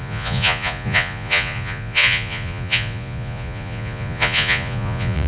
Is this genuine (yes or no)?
no